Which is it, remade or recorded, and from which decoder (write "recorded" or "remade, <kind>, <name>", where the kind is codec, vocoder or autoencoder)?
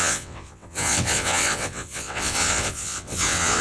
remade, vocoder, WaveNeXt